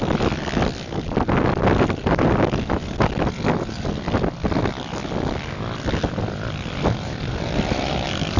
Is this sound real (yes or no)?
yes